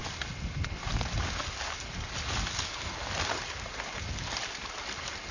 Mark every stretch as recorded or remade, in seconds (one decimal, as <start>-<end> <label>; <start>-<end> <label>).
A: 0.0-5.3 recorded